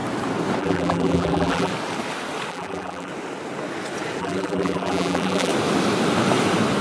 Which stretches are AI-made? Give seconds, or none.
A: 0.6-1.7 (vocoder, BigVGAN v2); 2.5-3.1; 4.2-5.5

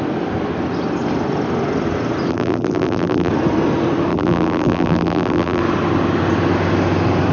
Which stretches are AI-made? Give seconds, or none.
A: 2.3-3.3 (vocoder, BigVGAN v2); 4.1-5.6

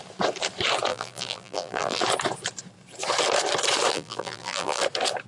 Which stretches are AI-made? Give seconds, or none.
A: 0.9-2.0 (vocoder, BigVGAN v2); 3.9-4.8

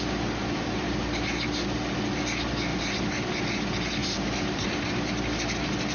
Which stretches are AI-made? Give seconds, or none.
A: 0.4-1.0 (vocoder, BigVGAN v2); 2.7-3.4; 4.0-5.0

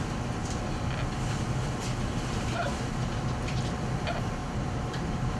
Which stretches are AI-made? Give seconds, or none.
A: 4.4-5.4 (vocoder, BigVGAN v2)

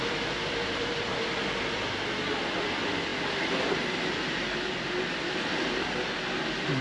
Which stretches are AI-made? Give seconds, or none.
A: 0.0-1.1 (vocoder, BigVGAN v2); 2.5-6.8

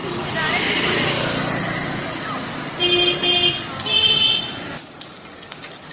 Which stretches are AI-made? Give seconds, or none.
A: 3.5-4.3 (vocoder, BigVGAN v2); 5.5-5.9